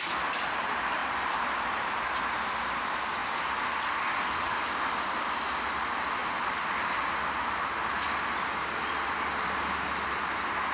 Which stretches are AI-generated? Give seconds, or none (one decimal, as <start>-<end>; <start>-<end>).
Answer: 1.0-2.0